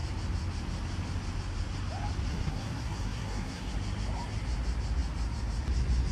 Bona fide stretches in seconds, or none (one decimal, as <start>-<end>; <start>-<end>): 0.0-2.3; 3.7-6.1